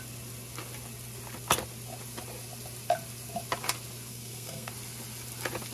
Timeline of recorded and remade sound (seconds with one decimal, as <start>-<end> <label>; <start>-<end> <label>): 0.0-4.1 recorded; 4.1-4.7 remade; 4.7-5.7 recorded